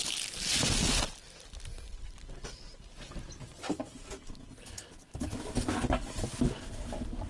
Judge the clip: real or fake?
real